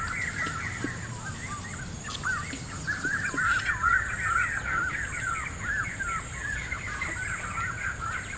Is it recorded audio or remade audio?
recorded